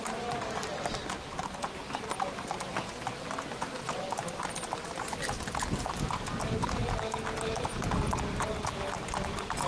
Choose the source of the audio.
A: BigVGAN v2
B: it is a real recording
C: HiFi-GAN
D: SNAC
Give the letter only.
B